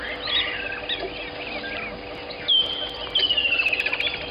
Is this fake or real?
real